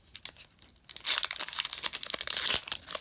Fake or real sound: real